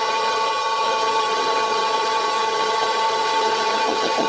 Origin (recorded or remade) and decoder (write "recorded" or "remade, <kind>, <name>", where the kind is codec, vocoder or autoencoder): remade, vocoder, HiFi-GAN